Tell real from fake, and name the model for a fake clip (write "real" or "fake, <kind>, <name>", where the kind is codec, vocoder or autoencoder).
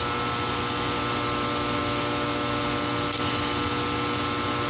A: real